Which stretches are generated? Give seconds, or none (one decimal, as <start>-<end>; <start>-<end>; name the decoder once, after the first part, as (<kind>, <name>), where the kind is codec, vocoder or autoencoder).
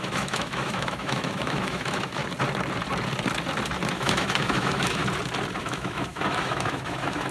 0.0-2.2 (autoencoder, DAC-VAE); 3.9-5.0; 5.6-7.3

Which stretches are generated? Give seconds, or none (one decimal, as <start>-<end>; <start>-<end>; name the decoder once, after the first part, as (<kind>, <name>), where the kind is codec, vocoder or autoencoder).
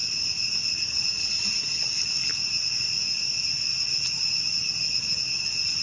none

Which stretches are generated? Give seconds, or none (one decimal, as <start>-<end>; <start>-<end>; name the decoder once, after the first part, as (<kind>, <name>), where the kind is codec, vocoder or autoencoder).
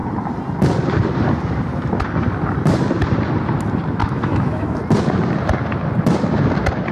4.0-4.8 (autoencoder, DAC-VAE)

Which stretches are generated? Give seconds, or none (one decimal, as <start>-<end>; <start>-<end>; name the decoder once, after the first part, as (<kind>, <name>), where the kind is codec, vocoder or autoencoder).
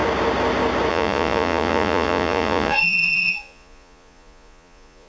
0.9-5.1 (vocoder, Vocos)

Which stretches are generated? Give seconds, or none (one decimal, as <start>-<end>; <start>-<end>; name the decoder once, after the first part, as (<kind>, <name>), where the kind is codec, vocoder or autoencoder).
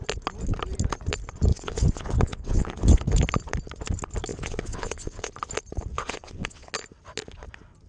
1.5-3.0 (vocoder, WaveNeXt); 4.3-5.3; 5.9-6.7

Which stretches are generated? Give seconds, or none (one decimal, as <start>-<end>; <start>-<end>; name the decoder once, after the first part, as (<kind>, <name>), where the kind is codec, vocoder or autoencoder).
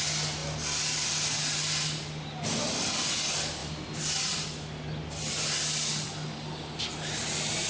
none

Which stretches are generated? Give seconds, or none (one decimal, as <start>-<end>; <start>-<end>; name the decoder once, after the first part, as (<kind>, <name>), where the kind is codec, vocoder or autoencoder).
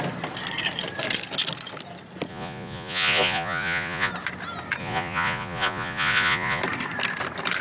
2.3-4.1 (vocoder, Vocos); 4.8-6.6